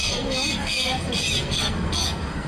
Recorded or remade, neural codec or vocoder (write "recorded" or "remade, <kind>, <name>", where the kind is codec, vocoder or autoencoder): remade, codec, SNAC